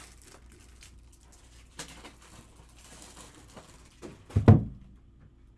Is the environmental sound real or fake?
real